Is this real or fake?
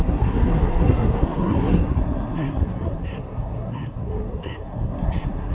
fake